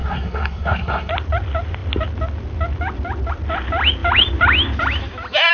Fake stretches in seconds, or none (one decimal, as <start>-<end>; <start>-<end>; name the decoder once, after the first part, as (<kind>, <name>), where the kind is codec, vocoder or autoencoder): 0.0-1.1 (codec, SNAC)